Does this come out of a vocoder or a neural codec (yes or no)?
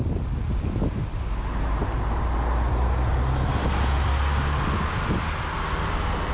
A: no